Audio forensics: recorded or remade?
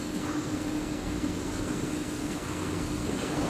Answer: remade